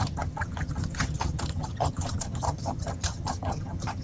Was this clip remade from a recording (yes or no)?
yes